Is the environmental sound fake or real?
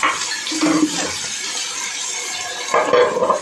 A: real